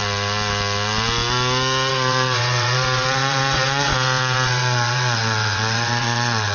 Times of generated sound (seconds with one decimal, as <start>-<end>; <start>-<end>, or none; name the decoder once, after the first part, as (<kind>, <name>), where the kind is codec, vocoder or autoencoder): 1.9-6.5 (vocoder, WaveNeXt)